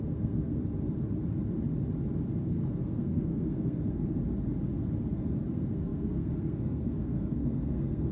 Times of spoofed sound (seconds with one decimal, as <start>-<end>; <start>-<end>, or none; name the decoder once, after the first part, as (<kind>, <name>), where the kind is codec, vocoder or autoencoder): 0.0-0.6 (codec, SNAC); 2.4-4.2; 5.5-8.1